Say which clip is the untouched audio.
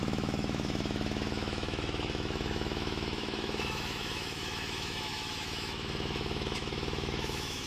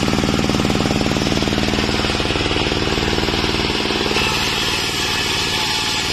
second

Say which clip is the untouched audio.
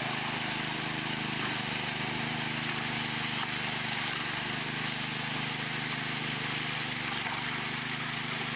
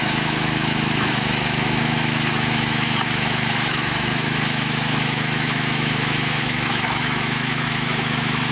first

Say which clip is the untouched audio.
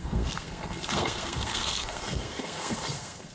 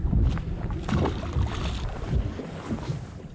second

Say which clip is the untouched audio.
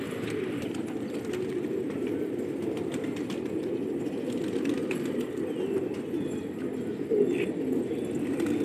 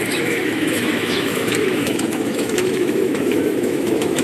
first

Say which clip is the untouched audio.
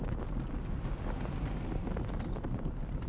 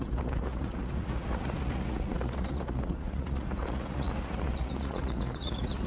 first